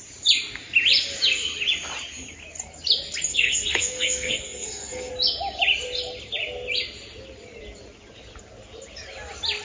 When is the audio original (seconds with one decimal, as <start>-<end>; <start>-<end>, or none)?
0.0-3.3; 5.1-9.6